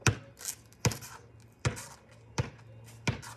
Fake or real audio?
real